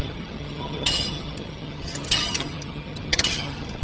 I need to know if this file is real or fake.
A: fake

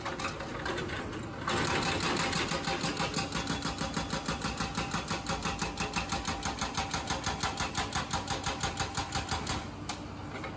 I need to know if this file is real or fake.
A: real